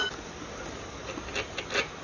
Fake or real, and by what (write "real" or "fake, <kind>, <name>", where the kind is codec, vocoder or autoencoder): real